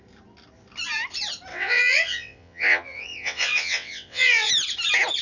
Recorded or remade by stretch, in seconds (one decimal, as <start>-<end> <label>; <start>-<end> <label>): 0.0-1.5 recorded; 1.5-4.5 remade; 4.5-5.2 recorded